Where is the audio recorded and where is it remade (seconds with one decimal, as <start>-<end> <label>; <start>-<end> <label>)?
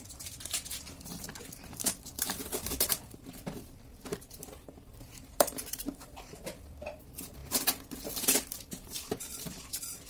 0.0-10.1 remade